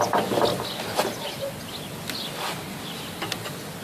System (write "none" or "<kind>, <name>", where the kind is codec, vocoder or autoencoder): none